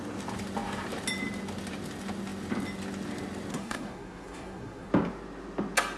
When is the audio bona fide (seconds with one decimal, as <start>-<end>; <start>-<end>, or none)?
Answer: 0.0-3.5; 4.9-6.0